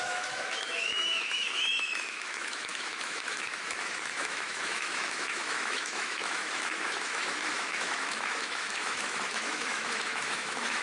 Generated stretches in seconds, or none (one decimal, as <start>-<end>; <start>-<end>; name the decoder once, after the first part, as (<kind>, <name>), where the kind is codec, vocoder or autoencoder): 0.0-10.8 (autoencoder, DAC-VAE)